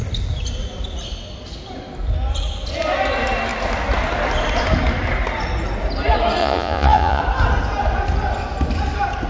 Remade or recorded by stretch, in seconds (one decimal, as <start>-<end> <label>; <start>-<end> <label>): 0.0-6.4 recorded; 6.4-7.2 remade; 7.2-9.3 recorded